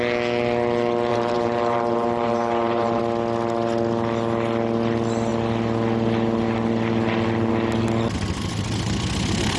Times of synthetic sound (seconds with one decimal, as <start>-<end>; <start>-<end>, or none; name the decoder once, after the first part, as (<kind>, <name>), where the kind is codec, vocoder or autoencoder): 1.1-3.0 (vocoder, BigVGAN v2)